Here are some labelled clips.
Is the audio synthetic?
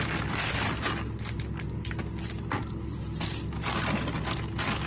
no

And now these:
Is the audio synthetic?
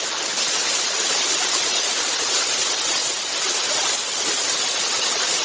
no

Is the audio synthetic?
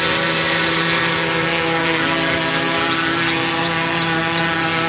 no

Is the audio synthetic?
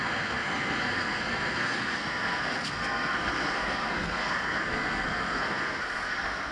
yes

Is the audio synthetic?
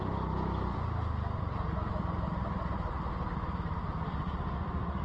no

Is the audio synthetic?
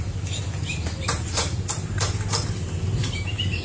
no